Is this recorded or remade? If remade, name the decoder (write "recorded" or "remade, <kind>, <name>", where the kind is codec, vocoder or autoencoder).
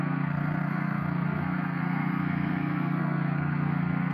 remade, codec, SNAC